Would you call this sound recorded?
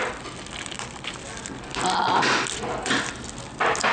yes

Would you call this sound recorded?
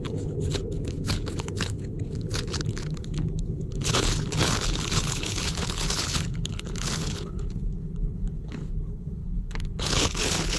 no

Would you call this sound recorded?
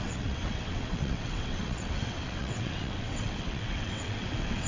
no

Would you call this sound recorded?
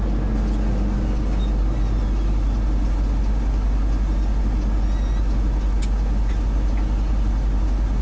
yes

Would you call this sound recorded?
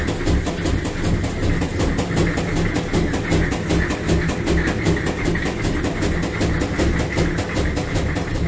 yes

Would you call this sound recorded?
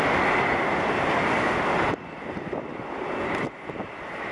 yes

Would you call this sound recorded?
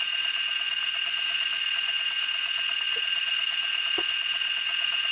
yes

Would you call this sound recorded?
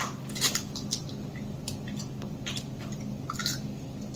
yes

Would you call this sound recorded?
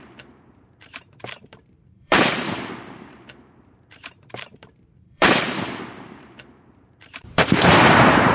no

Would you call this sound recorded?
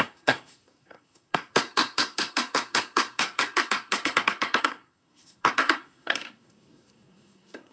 no